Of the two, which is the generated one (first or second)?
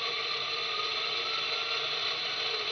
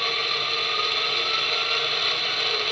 first